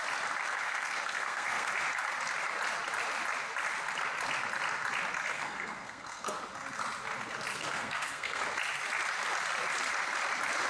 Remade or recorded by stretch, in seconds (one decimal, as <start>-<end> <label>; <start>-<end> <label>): 0.0-0.4 recorded; 0.4-1.7 remade; 1.7-5.3 recorded; 5.3-6.4 remade; 6.4-7.5 recorded; 7.5-8.4 remade; 8.4-10.7 recorded